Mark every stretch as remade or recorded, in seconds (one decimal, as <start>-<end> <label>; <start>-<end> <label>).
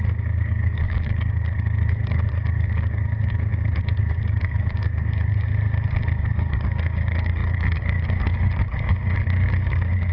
0.0-5.5 remade; 5.5-6.2 recorded; 6.2-10.1 remade